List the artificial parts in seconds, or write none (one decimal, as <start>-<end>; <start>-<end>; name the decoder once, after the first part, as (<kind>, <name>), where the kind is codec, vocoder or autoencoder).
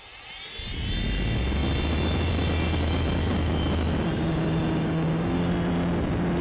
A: 4.3-5.5 (codec, DAC)